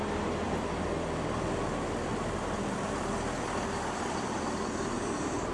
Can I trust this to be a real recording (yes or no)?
yes